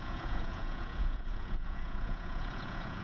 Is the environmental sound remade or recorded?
remade